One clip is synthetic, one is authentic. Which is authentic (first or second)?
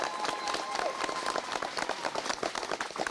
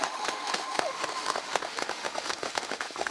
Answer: first